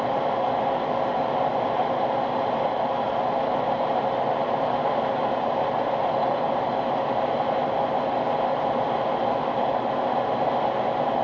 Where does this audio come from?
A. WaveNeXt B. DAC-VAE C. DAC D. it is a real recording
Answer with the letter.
D